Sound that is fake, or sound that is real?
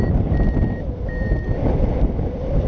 real